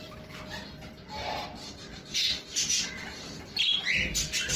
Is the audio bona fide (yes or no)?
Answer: no